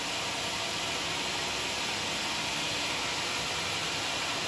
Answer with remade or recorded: recorded